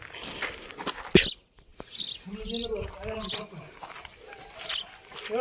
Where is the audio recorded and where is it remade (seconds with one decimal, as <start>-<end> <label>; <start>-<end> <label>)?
0.0-5.4 recorded